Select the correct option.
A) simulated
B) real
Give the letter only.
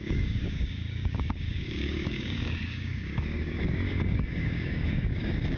A